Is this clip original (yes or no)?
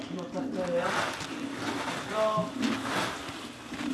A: yes